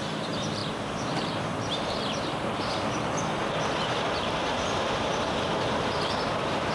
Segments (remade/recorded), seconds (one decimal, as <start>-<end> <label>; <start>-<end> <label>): 0.0-5.1 remade; 5.1-5.6 recorded; 5.6-6.7 remade